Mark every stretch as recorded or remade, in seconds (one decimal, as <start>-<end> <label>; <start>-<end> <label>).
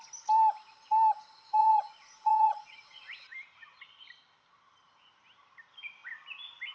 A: 0.0-1.6 recorded; 1.6-3.0 remade; 3.0-6.7 recorded